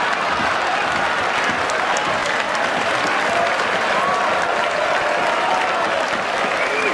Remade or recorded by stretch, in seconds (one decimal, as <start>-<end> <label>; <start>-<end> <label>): 0.0-6.9 recorded